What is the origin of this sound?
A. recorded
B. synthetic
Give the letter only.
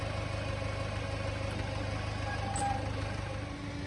A